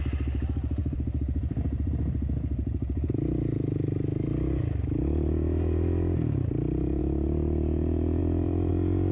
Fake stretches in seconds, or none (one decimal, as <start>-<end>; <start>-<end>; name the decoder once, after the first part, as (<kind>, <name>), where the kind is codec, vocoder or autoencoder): 0.8-1.9 (vocoder, BigVGAN v2); 8.2-8.7